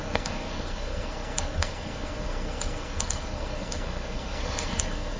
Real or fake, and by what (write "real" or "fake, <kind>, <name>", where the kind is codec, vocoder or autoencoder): fake, codec, SNAC